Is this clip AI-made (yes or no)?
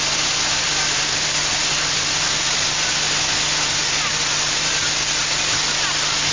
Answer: no